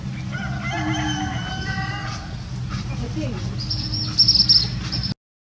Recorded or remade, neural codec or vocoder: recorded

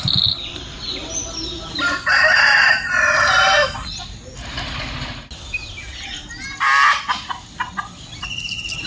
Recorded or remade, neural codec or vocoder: recorded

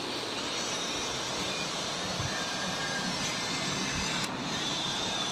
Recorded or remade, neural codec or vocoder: remade, vocoder, BigVGAN v2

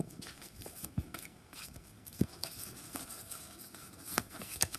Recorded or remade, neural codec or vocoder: remade, codec, SNAC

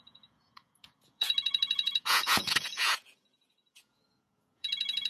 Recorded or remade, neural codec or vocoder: remade, vocoder, Vocos